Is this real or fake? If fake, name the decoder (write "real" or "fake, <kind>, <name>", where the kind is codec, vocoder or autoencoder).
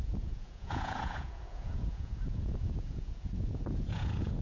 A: fake, vocoder, Vocos